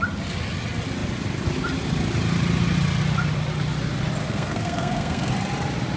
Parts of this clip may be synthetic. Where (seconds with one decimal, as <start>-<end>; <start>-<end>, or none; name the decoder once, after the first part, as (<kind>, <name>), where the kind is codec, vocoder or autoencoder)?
4.2-5.3 (codec, SNAC)